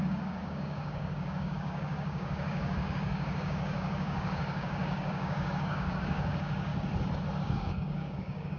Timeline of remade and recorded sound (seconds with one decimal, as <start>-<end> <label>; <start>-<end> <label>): 0.0-6.7 remade; 6.7-7.4 recorded; 7.4-8.6 remade